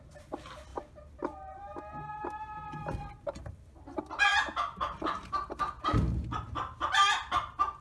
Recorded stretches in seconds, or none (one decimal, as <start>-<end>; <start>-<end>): 0.0-4.3; 6.4-7.8